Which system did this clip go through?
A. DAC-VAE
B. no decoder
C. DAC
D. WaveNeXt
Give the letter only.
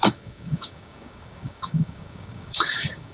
C